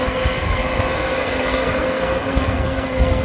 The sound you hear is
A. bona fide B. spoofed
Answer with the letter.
B